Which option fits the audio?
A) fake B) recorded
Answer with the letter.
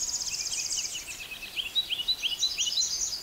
B